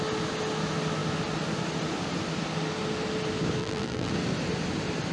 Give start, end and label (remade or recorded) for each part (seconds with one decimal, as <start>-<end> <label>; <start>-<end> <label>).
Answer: 0.0-3.6 recorded; 3.6-4.1 remade; 4.1-5.1 recorded

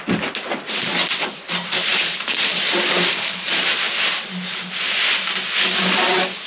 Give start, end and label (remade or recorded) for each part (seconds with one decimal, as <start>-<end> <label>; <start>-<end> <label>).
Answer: 0.0-1.9 recorded; 1.9-3.7 remade; 3.7-6.5 recorded

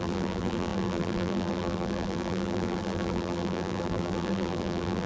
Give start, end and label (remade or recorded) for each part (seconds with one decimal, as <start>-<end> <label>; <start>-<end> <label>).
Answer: 0.0-5.1 remade

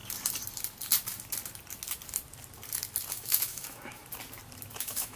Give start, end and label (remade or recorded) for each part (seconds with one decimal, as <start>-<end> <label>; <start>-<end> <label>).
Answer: 0.0-3.1 recorded; 3.1-4.0 remade; 4.0-4.8 recorded; 4.8-5.2 remade